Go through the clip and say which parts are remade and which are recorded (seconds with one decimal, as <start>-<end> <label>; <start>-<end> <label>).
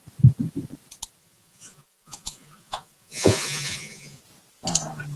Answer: 0.0-1.2 recorded; 1.2-4.2 remade; 4.2-5.2 recorded